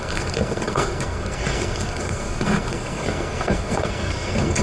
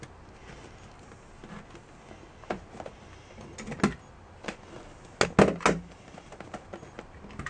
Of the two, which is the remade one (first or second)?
first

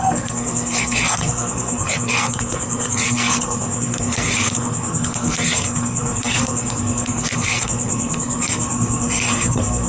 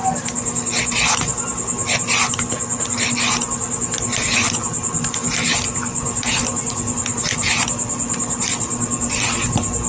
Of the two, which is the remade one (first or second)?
first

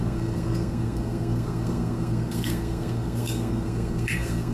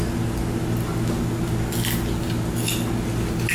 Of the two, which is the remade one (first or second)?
first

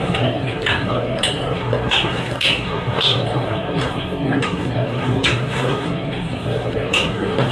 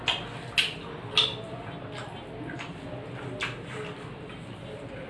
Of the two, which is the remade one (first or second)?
first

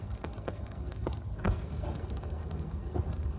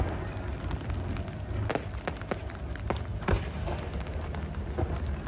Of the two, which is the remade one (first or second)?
first